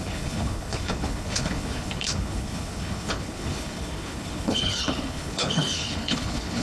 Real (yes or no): no